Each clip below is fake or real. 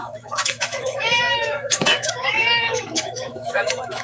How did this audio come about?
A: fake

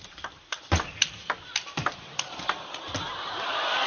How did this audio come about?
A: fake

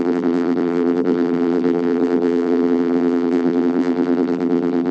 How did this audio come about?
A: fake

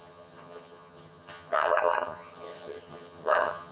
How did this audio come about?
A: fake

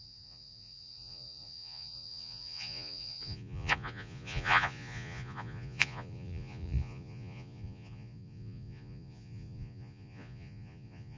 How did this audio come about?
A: fake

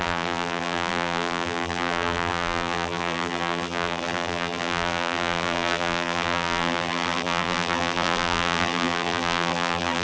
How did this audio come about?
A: fake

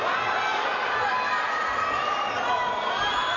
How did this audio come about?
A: real